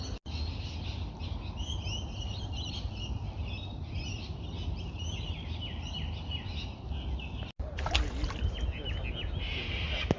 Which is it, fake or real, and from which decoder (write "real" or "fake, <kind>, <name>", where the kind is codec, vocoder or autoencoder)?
real